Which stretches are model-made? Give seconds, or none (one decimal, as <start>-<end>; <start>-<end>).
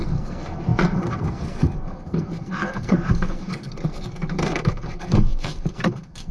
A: 0.0-6.3